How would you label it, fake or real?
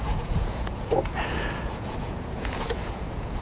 fake